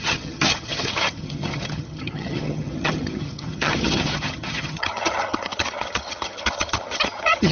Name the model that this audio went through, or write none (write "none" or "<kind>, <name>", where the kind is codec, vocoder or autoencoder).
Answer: vocoder, HiFi-GAN